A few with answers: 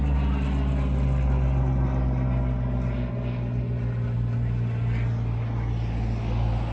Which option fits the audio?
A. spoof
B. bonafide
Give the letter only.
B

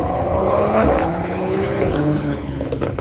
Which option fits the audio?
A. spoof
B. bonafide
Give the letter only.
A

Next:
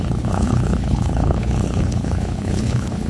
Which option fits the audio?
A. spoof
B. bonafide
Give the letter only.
A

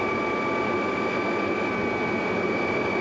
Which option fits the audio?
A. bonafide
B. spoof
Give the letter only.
A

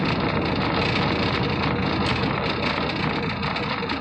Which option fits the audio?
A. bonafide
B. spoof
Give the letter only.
A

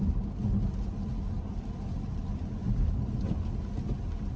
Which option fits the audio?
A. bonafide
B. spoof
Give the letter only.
A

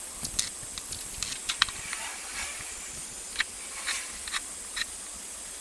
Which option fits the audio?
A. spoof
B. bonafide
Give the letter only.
B